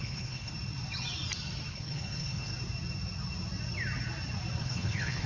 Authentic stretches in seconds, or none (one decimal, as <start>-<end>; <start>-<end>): 0.5-1.7; 2.5-4.6

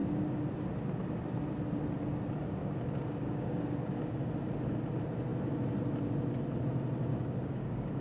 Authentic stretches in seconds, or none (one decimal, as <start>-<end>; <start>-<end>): 0.0-2.6; 4.2-7.1